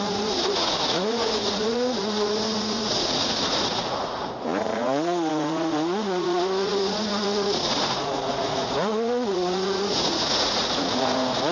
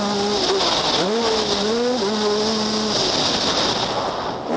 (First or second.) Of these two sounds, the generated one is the first